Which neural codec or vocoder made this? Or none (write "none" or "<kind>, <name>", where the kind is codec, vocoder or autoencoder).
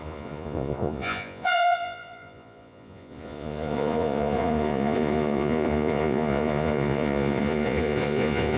vocoder, Vocos